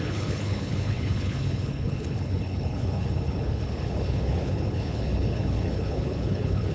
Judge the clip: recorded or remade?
remade